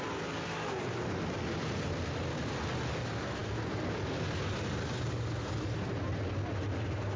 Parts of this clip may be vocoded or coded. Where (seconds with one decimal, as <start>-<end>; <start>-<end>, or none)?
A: none